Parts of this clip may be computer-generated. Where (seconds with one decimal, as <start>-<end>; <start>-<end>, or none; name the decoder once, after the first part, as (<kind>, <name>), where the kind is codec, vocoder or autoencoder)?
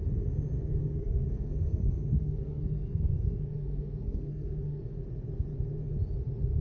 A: 0.8-4.8 (codec, SNAC)